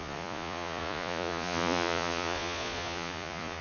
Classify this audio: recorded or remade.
remade